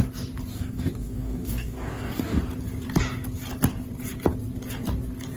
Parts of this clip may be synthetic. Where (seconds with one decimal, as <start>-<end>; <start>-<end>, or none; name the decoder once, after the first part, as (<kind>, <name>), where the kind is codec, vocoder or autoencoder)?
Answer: 0.5-2.4 (codec, DAC)